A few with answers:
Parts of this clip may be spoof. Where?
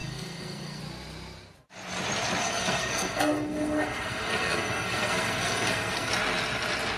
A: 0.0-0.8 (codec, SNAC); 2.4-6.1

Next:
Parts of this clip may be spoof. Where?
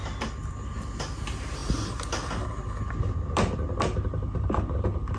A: none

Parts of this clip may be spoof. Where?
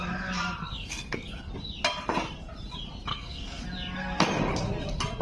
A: 0.6-1.5 (codec, SNAC); 3.1-3.6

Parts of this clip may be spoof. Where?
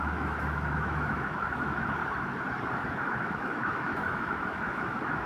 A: 0.0-2.0 (autoencoder, DAC-VAE); 2.7-5.3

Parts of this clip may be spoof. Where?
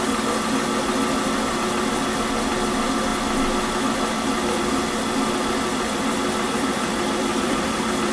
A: 5.7-8.1 (vocoder, BigVGAN v2)